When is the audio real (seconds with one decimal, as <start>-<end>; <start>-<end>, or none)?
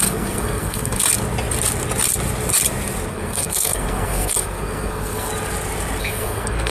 1.0-3.1; 5.3-6.0